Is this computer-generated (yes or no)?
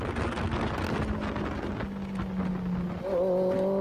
no